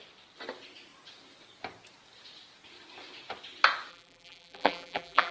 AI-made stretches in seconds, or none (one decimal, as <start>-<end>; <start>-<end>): 3.9-5.3